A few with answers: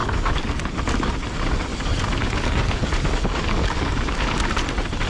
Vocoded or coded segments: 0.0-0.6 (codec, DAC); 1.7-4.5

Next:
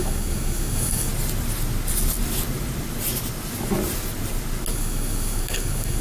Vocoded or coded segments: 0.0-1.1 (codec, DAC); 4.7-6.0

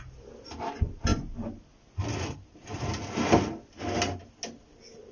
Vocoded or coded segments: none

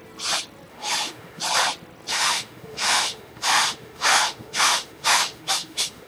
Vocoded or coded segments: 0.7-1.4 (autoencoder, DAC-VAE); 2.1-6.1

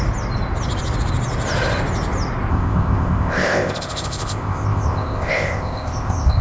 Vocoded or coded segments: 2.5-6.4 (codec, ZipCodec)

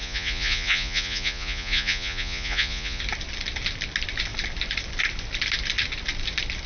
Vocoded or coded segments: 0.0-3.0 (vocoder, Vocos)

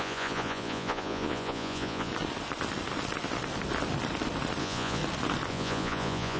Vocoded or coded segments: 0.0-2.1 (vocoder, Vocos); 4.6-5.0; 5.5-6.4

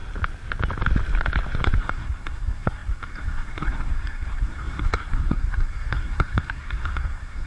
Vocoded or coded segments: 1.8-7.5 (codec, SNAC)